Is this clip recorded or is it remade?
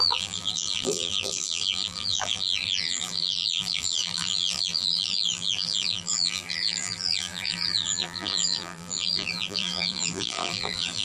remade